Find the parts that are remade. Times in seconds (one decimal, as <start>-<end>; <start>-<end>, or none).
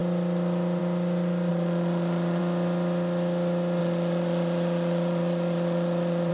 1.5-2.4; 3.8-6.3